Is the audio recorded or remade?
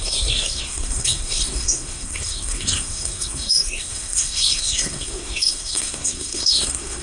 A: remade